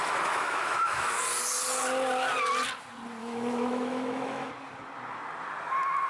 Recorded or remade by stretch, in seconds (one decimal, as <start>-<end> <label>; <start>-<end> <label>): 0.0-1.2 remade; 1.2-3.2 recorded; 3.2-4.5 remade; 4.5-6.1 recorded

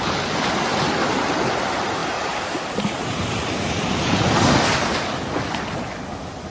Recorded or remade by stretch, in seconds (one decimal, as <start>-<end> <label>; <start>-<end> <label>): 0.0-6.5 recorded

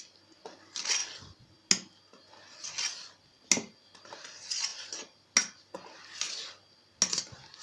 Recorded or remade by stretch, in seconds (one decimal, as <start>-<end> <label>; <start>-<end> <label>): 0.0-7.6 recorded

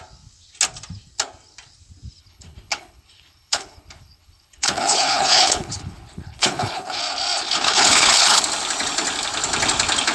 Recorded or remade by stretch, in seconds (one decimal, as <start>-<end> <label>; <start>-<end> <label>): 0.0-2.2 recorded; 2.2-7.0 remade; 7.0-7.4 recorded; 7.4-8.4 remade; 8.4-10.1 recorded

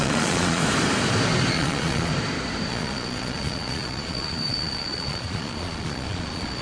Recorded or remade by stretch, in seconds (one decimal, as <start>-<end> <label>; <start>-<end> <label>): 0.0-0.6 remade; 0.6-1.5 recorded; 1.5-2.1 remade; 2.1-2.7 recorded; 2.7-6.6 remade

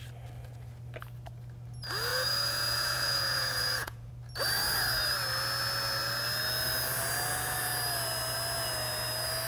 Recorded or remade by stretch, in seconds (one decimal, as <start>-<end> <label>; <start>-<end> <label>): 0.0-2.1 recorded; 2.1-4.1 remade; 4.1-9.5 recorded

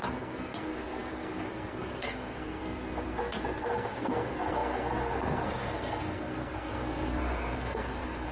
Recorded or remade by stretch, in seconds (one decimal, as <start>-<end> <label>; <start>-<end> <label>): 0.0-8.3 remade